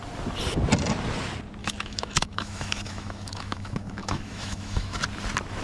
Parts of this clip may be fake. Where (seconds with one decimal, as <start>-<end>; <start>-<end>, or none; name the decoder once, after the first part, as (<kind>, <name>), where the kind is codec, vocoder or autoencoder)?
1.6-5.0 (autoencoder, DAC-VAE)